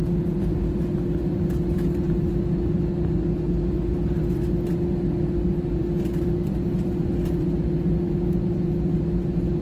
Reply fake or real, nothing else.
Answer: real